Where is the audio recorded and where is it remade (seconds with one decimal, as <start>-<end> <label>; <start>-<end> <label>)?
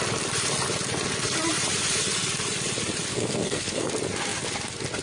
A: 0.0-3.1 recorded; 3.1-3.9 remade; 3.9-5.0 recorded